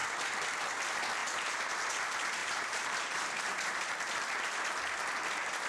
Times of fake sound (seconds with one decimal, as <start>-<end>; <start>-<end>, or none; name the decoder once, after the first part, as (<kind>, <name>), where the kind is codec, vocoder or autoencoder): 2.4-3.9 (vocoder, BigVGAN v2)